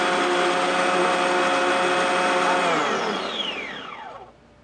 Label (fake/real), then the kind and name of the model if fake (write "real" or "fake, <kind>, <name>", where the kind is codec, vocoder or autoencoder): real